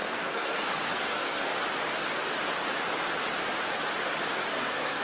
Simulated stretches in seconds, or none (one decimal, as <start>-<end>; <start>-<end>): 0.0-1.5; 4.5-5.0